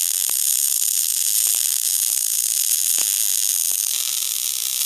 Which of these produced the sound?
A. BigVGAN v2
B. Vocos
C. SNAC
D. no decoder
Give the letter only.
D